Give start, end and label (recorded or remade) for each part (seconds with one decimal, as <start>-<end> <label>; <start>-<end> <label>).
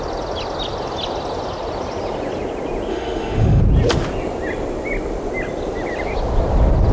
0.0-2.9 recorded; 2.9-3.6 remade; 3.6-6.9 recorded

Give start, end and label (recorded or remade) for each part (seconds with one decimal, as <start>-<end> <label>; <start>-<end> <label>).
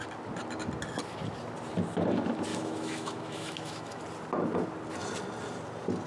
0.0-2.5 recorded; 2.5-4.0 remade; 4.0-6.1 recorded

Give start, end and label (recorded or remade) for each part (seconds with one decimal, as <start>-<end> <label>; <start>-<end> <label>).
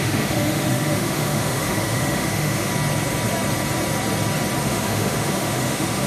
0.0-2.7 remade; 2.7-4.6 recorded; 4.6-6.1 remade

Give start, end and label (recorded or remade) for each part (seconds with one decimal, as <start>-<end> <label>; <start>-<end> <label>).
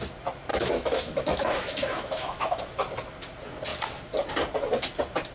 0.0-0.5 recorded; 0.5-2.6 remade; 2.6-5.3 recorded